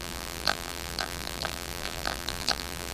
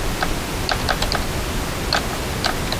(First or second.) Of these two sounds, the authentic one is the second